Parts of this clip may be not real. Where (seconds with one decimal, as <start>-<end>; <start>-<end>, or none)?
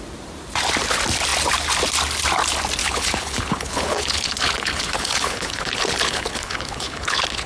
2.8-7.5